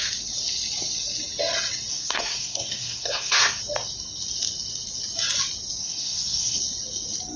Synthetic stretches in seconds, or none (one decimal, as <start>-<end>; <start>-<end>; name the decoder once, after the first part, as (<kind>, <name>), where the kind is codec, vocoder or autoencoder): 1.9-3.6 (codec, SNAC); 5.8-6.6